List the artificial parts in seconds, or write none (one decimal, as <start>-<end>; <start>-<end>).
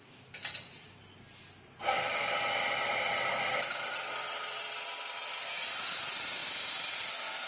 6.4-7.1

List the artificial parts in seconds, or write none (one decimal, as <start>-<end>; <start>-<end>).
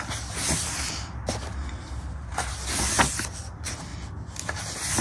1.5-2.5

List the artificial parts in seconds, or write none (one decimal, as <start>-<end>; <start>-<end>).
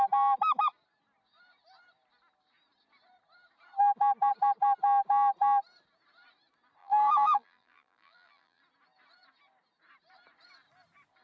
6.8-8.6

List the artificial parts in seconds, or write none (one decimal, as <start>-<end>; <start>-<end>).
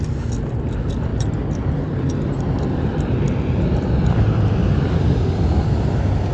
1.1-4.9